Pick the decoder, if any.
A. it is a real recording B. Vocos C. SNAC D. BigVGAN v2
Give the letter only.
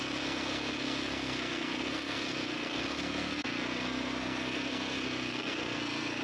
C